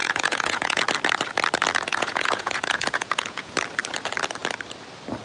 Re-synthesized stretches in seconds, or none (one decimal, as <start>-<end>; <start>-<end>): 0.0-0.8; 1.9-3.5